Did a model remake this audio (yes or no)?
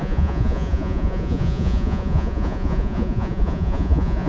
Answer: yes